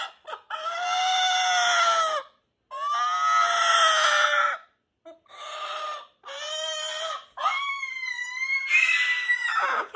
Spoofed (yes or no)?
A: no